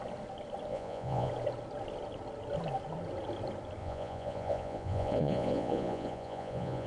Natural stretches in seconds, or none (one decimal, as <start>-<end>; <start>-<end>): 0.0-0.7; 1.3-3.8